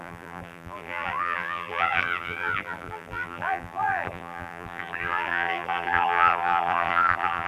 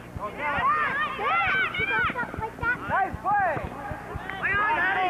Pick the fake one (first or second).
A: first